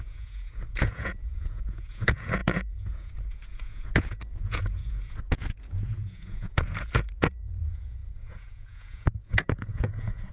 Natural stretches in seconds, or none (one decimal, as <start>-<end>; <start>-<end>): none